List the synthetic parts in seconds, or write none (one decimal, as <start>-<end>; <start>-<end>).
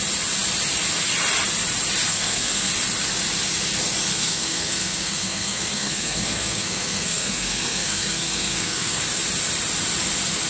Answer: 2.1-2.7; 4.1-9.0